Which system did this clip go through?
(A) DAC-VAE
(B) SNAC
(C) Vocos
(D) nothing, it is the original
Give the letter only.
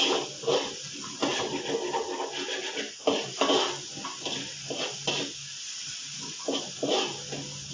D